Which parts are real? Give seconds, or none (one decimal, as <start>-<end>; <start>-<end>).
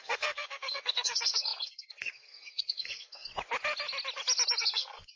3.3-4.6